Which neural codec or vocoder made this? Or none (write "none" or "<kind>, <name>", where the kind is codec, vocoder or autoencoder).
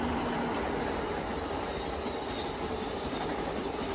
none